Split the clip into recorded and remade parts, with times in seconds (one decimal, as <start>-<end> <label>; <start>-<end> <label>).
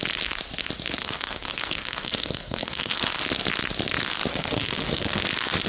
0.0-1.0 recorded; 1.0-3.1 remade; 3.1-4.3 recorded; 4.3-5.2 remade; 5.2-5.7 recorded